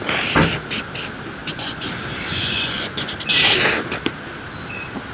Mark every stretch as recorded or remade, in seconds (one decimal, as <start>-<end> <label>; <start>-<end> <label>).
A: 0.0-1.4 recorded; 1.4-1.9 remade; 1.9-2.3 recorded; 2.3-3.1 remade; 3.1-5.1 recorded